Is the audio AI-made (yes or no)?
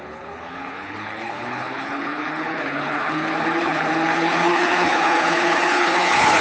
yes